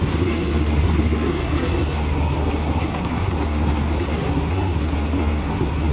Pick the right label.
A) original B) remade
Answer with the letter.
B